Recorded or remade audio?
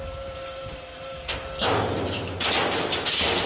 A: recorded